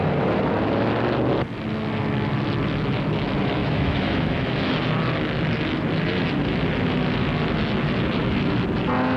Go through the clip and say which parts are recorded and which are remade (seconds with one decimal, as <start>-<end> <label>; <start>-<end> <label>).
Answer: 0.0-3.6 recorded; 3.6-4.7 remade; 4.7-9.2 recorded